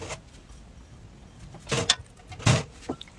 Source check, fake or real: real